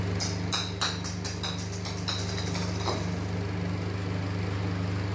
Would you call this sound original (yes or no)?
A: yes